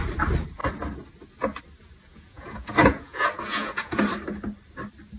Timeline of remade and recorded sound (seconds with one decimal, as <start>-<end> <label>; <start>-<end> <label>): 0.0-2.1 recorded; 2.1-4.0 remade; 4.0-5.2 recorded

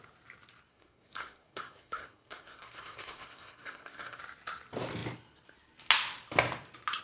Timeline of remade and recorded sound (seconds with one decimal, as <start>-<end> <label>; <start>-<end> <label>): 0.0-0.7 recorded; 0.7-4.2 remade; 4.2-7.0 recorded